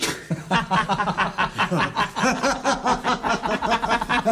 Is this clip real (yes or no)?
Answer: yes